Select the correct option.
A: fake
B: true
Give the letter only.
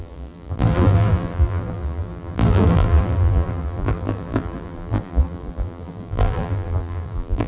A